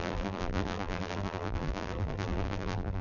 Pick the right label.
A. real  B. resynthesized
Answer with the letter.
B